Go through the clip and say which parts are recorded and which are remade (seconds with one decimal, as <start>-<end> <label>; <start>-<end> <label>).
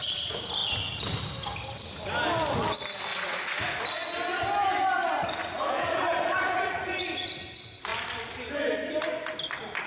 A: 0.0-3.1 recorded; 3.1-3.8 remade; 3.8-5.4 recorded; 5.4-7.3 remade; 7.3-9.9 recorded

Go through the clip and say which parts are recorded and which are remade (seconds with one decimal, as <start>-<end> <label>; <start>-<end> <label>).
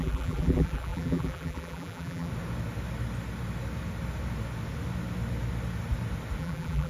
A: 0.0-2.3 remade; 2.3-6.4 recorded; 6.4-6.9 remade